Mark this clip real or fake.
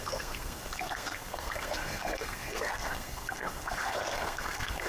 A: fake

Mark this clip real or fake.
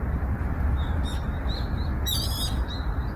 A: real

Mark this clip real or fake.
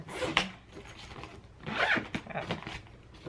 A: real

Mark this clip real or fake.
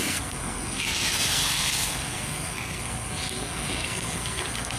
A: fake